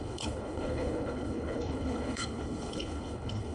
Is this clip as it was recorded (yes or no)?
no